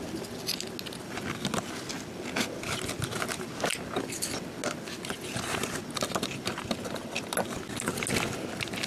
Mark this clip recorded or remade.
recorded